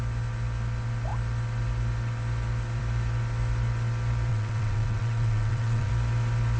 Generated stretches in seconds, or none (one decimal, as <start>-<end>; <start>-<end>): 4.3-5.9